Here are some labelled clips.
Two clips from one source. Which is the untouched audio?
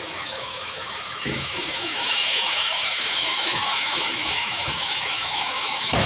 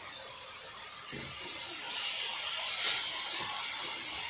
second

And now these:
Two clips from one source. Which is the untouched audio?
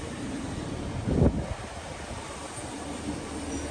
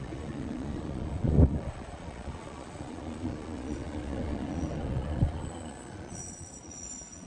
first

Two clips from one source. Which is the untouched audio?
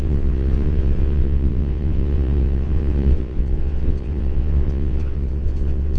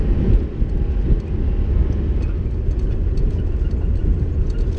second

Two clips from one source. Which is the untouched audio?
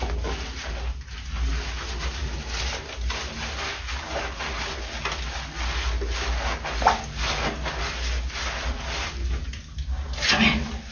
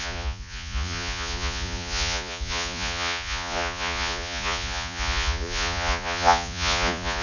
first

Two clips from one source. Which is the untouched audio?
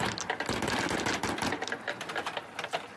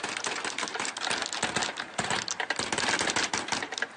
first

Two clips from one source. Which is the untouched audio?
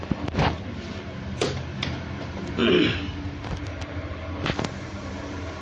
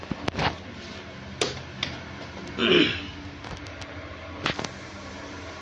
second